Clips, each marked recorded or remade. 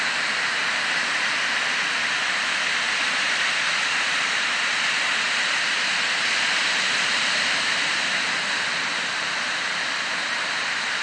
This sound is remade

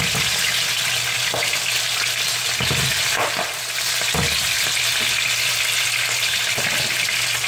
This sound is recorded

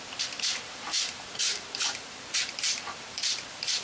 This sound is remade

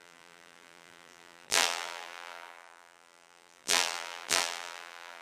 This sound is remade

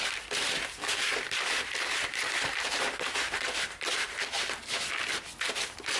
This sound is remade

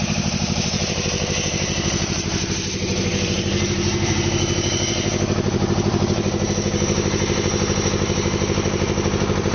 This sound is remade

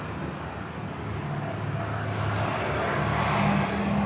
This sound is recorded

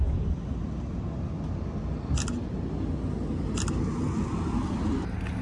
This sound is recorded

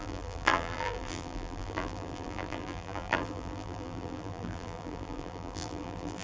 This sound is remade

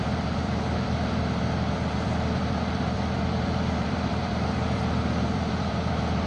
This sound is remade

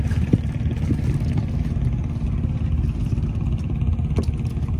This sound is recorded